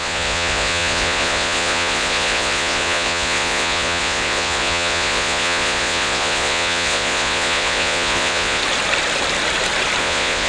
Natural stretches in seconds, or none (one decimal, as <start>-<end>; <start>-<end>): 8.6-10.0